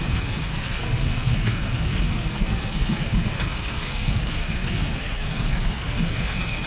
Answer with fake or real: fake